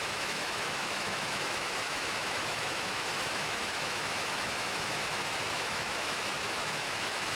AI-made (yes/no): yes